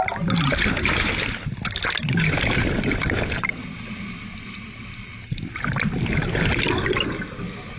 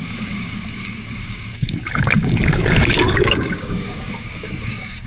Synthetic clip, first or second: second